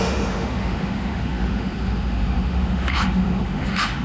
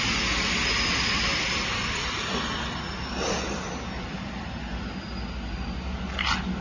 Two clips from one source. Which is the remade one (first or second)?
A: first